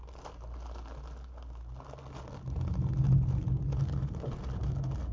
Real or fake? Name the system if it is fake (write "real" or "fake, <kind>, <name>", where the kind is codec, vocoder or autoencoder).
real